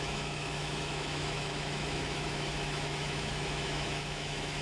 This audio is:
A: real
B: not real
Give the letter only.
B